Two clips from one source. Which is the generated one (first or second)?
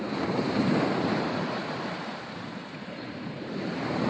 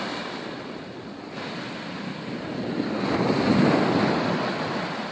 first